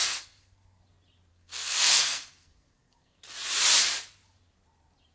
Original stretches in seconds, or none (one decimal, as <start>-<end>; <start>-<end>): 0.8-1.3; 3.2-5.1